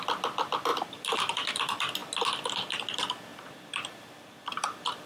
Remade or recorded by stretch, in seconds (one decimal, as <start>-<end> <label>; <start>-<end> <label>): 0.0-0.7 recorded; 0.7-1.5 remade; 1.5-3.3 recorded; 3.3-5.1 remade